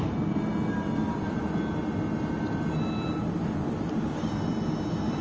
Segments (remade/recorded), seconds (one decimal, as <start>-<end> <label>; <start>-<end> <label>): 0.0-5.2 recorded